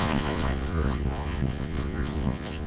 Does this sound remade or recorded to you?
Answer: remade